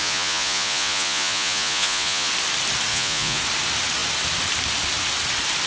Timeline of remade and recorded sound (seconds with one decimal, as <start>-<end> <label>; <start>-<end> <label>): 0.0-2.3 remade; 2.3-2.9 recorded; 2.9-3.4 remade; 3.4-5.7 recorded